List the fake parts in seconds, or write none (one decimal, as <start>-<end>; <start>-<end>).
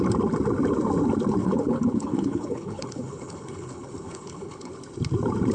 1.4-4.7